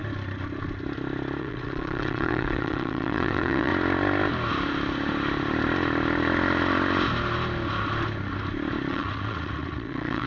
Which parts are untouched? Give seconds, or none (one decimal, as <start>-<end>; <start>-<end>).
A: 0.0-1.4; 3.7-8.9